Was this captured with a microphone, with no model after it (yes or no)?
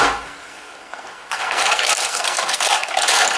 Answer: no